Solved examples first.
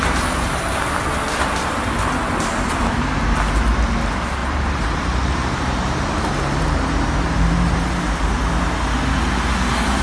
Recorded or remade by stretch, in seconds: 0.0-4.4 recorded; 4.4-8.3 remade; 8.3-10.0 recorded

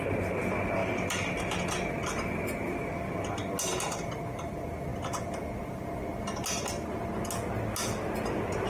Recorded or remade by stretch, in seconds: 0.0-8.7 recorded

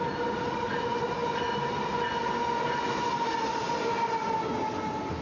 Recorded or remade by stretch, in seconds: 0.0-5.2 recorded

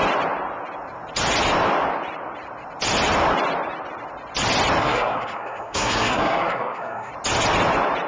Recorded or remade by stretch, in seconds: 0.0-4.8 recorded; 4.8-7.1 remade; 7.1-8.1 recorded